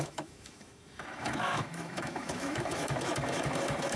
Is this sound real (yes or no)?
no